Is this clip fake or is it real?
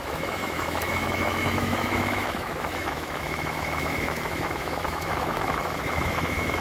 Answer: fake